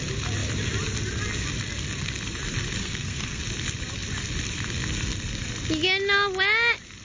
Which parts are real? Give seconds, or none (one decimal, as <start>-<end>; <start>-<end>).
0.0-2.8; 3.4-7.0